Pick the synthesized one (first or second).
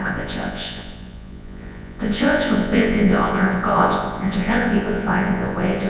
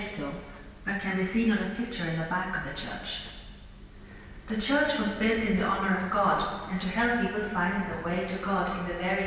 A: first